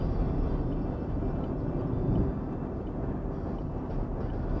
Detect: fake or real real